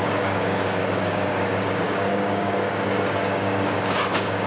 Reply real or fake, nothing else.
fake